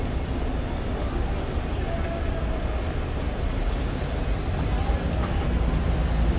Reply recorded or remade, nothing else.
recorded